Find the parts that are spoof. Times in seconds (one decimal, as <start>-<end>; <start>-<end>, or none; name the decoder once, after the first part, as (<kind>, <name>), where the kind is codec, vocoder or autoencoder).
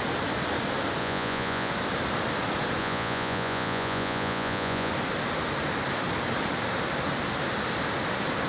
1.0-1.7 (vocoder, Vocos); 2.8-4.9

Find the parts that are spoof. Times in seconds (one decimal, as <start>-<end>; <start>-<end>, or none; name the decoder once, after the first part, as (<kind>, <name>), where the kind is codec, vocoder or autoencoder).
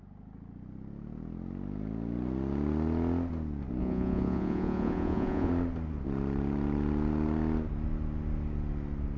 3.8-5.5 (vocoder, Vocos)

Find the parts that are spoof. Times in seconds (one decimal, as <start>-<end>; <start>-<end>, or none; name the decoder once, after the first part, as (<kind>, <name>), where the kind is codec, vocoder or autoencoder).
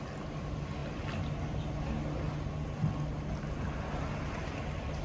none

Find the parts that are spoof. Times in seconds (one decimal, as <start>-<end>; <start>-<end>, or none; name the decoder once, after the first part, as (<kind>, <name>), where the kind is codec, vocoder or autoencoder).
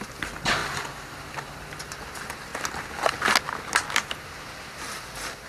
none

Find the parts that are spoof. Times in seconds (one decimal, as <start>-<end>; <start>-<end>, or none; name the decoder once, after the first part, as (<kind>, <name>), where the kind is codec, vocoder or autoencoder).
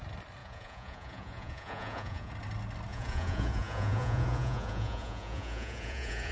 0.4-2.3 (vocoder, Vocos); 2.9-6.3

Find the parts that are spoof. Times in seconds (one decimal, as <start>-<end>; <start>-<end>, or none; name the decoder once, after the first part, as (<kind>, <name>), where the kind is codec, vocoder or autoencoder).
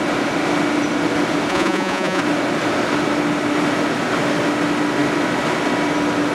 1.5-2.2 (vocoder, Vocos)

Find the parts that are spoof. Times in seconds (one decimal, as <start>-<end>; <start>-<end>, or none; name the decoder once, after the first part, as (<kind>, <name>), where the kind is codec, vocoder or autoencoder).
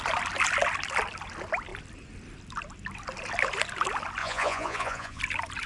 4.2-5.2 (vocoder, Vocos)